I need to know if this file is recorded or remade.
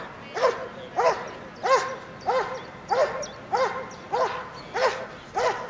recorded